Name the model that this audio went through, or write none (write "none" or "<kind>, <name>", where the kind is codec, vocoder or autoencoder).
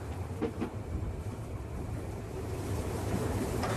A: vocoder, BigVGAN v2